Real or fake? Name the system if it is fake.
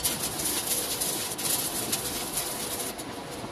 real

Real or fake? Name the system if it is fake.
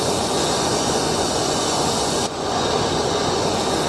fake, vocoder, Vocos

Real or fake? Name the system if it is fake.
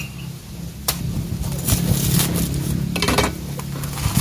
real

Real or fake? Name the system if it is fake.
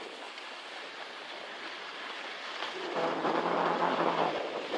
real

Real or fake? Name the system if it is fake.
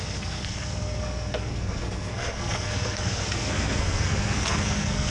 fake, codec, SNAC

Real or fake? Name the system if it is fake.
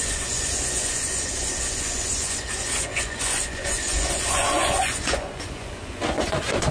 fake, vocoder, Vocos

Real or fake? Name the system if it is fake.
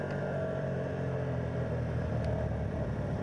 fake, vocoder, BigVGAN v2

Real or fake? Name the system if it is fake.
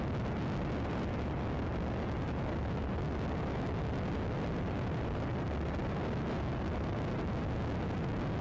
real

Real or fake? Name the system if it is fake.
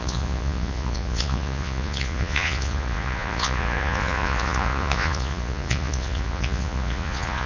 fake, vocoder, Vocos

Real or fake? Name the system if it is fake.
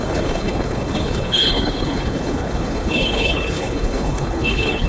fake, codec, HILCodec